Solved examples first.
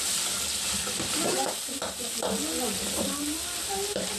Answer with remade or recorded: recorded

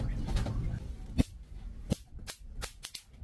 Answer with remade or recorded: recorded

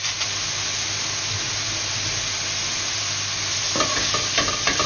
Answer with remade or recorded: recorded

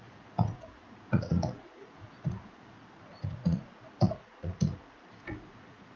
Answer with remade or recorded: remade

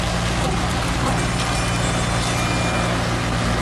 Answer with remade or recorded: recorded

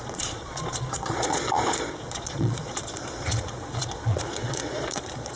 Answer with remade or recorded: remade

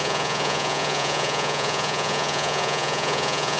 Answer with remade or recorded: remade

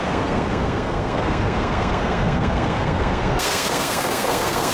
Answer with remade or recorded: remade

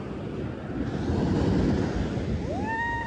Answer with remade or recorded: recorded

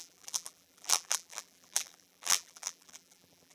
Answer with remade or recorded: remade